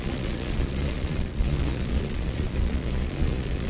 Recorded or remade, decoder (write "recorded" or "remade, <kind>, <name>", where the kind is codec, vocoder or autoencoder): remade, vocoder, Vocos